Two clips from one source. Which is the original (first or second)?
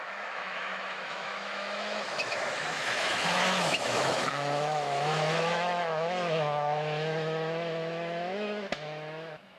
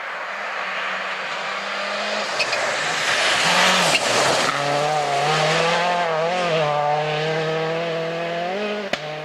second